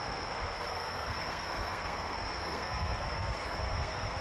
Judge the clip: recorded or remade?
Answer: remade